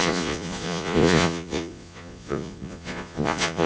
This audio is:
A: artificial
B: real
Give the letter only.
A